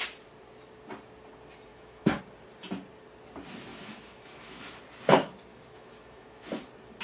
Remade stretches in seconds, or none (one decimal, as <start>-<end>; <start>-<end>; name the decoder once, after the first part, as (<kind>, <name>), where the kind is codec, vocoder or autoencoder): 1.7-2.2 (autoencoder, DAC-VAE); 3.7-4.8; 5.5-6.5